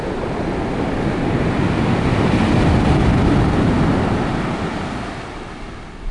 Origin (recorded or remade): recorded